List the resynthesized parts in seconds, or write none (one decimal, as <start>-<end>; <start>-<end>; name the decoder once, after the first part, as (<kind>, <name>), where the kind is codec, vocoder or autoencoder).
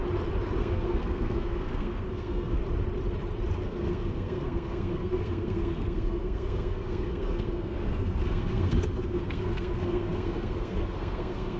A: 0.6-2.6 (codec, SNAC); 3.6-11.6